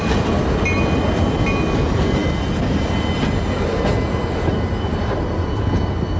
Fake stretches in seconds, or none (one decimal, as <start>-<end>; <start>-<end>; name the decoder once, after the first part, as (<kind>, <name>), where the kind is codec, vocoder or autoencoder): 4.9-5.6 (vocoder, BigVGAN v2)